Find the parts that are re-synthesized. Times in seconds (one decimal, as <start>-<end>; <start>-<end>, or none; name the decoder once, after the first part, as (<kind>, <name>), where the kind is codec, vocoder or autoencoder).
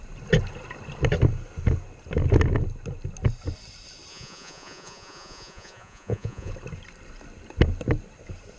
4.1-6.5 (vocoder, Vocos)